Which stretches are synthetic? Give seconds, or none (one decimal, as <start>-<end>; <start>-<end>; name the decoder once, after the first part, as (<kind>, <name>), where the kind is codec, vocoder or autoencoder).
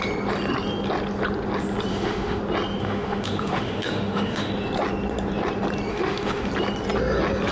1.9-2.4 (autoencoder, DAC-VAE); 2.8-4.5; 5.9-6.5